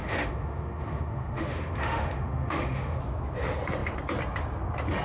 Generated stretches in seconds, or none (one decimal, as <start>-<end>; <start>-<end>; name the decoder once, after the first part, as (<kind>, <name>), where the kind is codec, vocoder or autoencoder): 0.0-3.0 (autoencoder, DAC-VAE)